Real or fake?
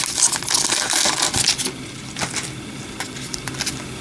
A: real